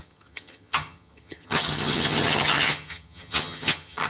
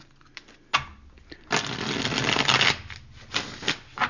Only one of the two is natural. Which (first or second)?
second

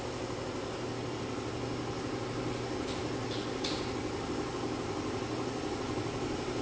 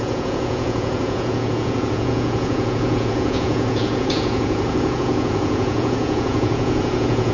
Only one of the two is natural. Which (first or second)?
first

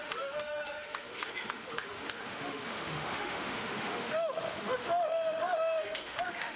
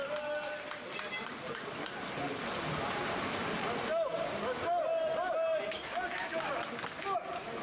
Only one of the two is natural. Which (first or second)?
second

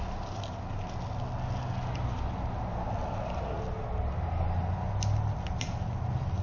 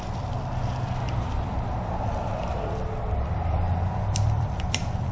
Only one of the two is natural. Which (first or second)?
first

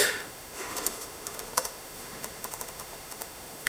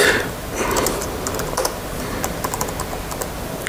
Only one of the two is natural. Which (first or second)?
second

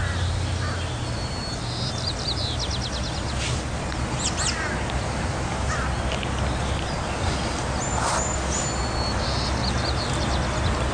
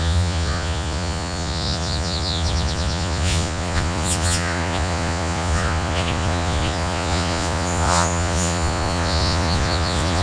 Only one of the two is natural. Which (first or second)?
first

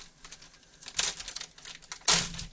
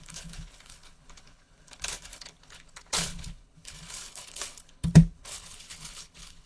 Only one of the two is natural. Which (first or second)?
first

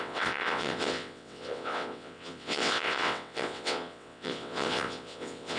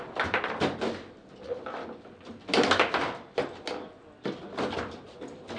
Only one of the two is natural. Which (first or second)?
second